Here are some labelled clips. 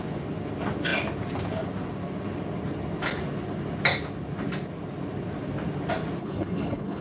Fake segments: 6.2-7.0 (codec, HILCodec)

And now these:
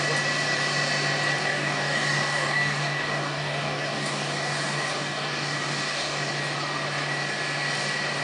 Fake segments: 1.4-6.3 (codec, DAC)

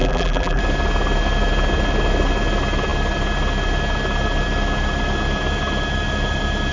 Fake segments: 0.0-0.6 (vocoder, BigVGAN v2)

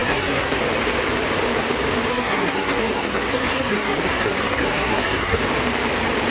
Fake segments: 0.0-0.6 (codec, SNAC); 2.1-5.4

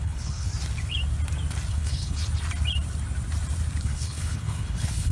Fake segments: 0.0-0.5 (codec, HILCodec); 1.7-2.2; 3.8-5.1

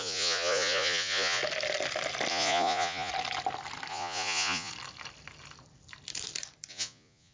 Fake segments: 0.0-1.4 (vocoder, Vocos); 2.3-3.1; 3.9-4.7; 6.7-7.3